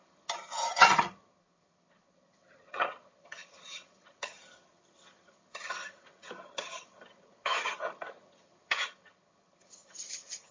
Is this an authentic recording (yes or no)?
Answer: no